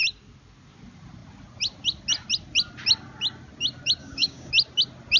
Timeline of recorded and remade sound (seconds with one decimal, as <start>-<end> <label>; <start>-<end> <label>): 0.0-4.0 recorded; 4.0-4.5 remade; 4.5-5.2 recorded